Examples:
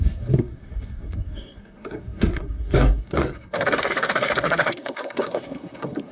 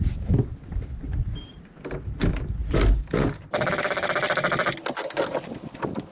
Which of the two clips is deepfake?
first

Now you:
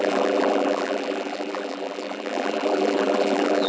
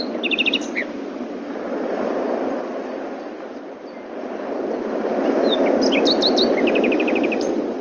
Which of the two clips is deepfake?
first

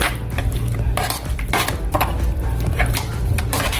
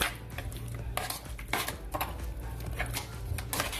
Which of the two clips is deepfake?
first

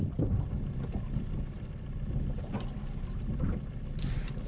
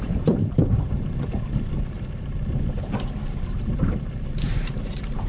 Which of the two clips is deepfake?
second